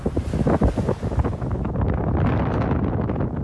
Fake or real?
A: real